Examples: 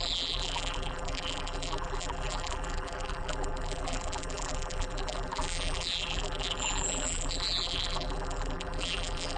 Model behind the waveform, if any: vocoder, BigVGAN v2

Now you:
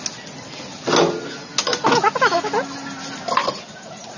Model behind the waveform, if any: none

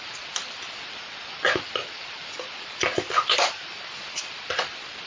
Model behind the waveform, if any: none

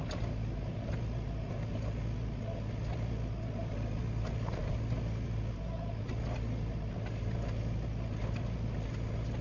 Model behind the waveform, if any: none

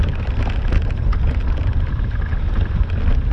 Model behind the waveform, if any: none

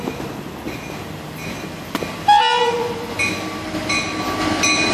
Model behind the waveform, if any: none